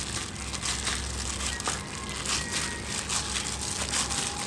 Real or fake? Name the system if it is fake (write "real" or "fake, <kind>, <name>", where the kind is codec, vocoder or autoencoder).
real